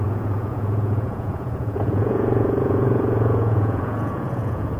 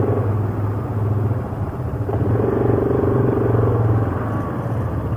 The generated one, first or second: first